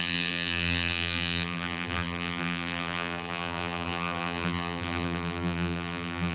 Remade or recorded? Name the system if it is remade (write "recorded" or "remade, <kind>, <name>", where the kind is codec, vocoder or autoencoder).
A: remade, vocoder, BigVGAN v2